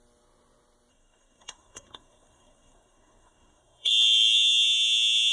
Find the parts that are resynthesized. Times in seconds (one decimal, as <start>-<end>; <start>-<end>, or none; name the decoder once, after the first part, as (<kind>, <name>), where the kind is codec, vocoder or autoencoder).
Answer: 0.9-3.9 (codec, SNAC)